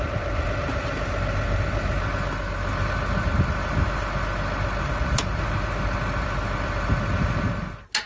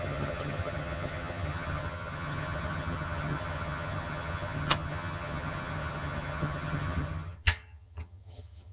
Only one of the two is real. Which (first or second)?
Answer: first